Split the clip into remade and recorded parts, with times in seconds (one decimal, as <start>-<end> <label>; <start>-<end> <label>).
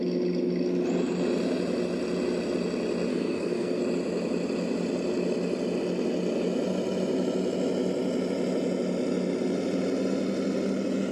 0.0-3.1 recorded; 3.1-3.8 remade; 3.8-11.1 recorded